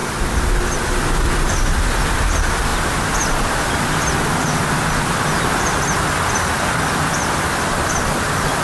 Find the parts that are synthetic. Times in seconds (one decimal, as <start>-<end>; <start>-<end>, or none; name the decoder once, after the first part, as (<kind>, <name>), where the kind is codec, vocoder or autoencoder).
none